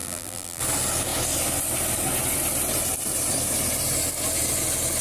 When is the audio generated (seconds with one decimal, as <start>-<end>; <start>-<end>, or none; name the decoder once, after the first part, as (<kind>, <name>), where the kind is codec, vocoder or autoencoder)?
0.0-0.6 (vocoder, BigVGAN v2)